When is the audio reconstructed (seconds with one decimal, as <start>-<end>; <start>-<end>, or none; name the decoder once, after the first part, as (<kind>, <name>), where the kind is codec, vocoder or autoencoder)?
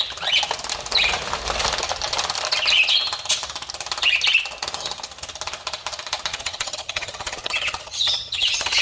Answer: 6.3-8.8 (vocoder, HiFi-GAN)